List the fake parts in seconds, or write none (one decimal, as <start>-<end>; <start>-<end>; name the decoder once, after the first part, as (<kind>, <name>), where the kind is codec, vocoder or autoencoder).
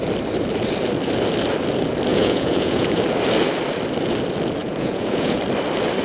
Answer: 2.1-3.0 (vocoder, Vocos); 4.6-5.4